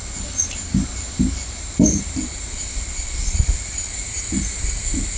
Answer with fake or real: fake